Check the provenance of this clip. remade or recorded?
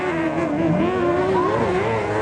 recorded